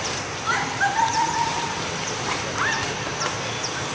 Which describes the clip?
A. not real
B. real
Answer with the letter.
B